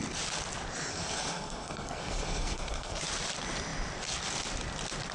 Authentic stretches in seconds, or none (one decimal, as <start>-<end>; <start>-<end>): 0.0-0.9; 3.0-5.1